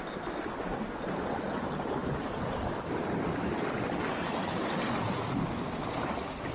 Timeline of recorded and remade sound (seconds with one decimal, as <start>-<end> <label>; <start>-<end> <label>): 0.0-6.5 recorded